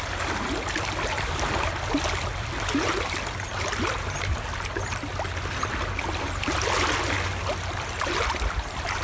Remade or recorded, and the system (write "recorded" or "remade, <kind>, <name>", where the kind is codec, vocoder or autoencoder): recorded